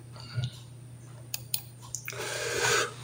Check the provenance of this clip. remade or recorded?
remade